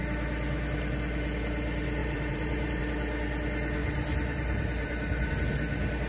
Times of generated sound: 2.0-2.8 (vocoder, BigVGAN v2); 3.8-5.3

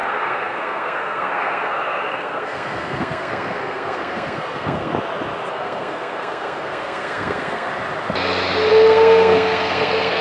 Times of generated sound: 0.0-4.9 (codec, SNAC); 5.5-7.7; 8.7-10.2

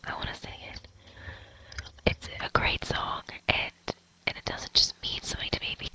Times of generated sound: 0.5-2.4 (vocoder, HiFi-GAN)